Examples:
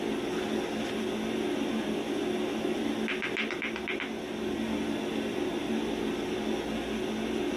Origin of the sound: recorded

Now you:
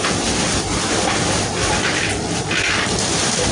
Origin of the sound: recorded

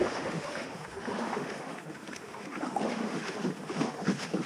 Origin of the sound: remade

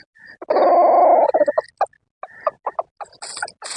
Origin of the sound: recorded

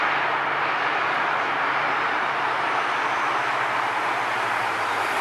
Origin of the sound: recorded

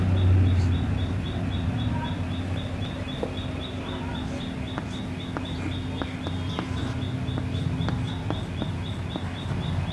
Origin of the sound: recorded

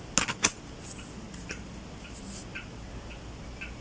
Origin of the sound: recorded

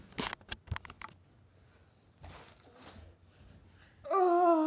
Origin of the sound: recorded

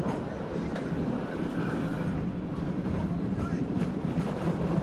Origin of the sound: recorded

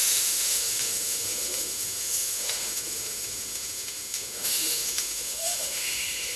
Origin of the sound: remade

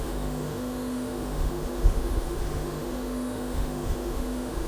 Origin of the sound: remade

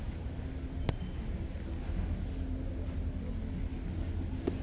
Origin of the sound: recorded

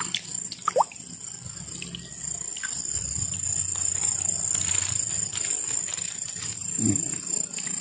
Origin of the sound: recorded